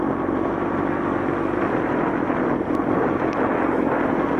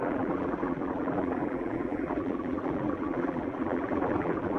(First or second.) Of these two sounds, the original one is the first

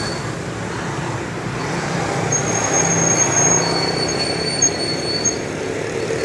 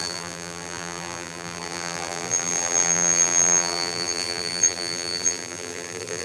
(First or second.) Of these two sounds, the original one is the first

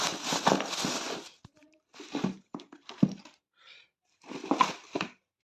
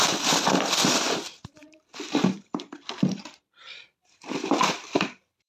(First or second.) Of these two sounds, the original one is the first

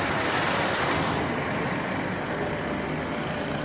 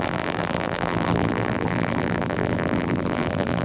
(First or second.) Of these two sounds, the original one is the first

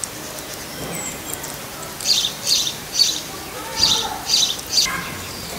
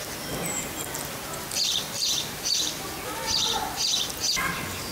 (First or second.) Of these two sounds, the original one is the second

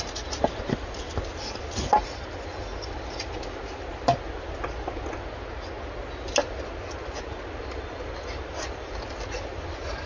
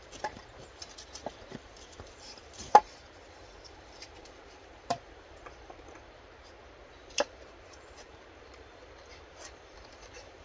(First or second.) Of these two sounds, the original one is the first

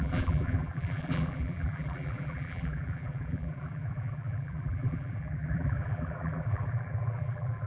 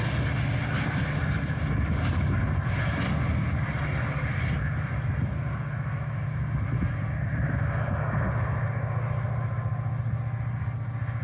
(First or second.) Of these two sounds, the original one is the second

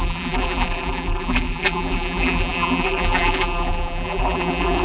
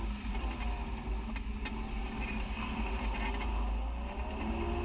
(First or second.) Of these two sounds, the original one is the second